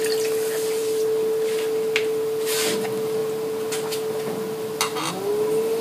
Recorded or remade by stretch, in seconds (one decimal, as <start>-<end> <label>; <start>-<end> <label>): 0.0-5.8 recorded